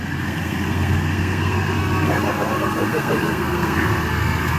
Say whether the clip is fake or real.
fake